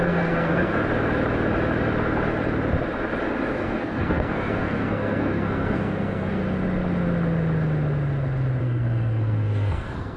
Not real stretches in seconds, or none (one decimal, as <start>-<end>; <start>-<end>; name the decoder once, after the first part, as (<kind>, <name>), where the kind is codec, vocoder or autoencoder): 0.0-0.8 (codec, SNAC); 3.5-6.4; 8.6-10.2